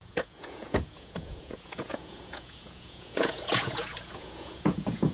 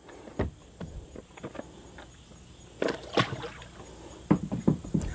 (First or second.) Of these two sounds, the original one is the second